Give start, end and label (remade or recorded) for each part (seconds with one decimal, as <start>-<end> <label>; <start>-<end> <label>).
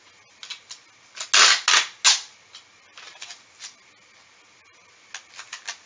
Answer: 0.0-5.9 recorded